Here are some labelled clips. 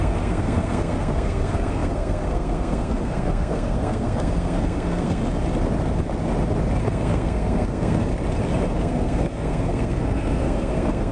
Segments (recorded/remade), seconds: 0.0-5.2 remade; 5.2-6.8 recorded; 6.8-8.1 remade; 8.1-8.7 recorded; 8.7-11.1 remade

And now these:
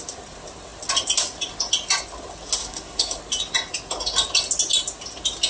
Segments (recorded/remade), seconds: 0.0-2.6 recorded; 2.6-3.2 remade; 3.2-5.5 recorded

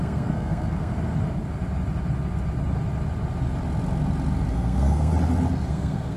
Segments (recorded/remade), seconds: 0.0-0.9 remade; 0.9-4.5 recorded; 4.5-5.1 remade; 5.1-5.7 recorded; 5.7-6.2 remade

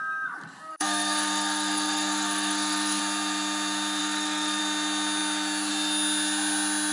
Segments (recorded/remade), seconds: 0.0-0.7 recorded; 0.7-3.0 remade; 3.0-4.0 recorded; 4.0-4.6 remade; 4.6-6.9 recorded

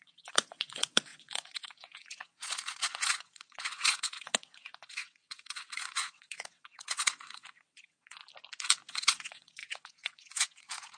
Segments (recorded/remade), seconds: 0.0-8.2 remade; 8.2-8.9 recorded; 8.9-11.0 remade